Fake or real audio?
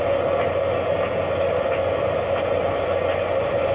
real